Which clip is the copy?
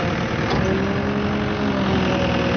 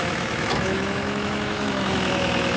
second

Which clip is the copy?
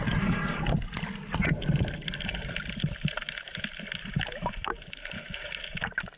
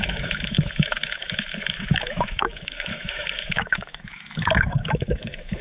second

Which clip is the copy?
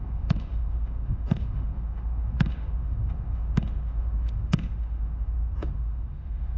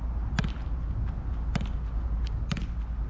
first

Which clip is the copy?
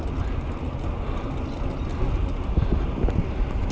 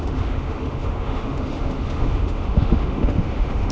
second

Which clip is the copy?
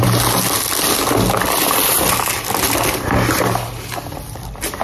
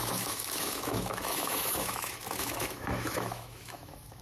second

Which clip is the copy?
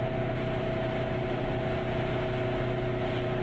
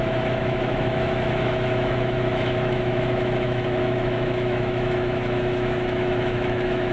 second